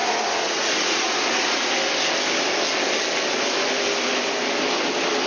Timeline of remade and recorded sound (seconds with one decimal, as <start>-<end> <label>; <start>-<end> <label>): 0.0-1.7 remade; 1.7-5.3 recorded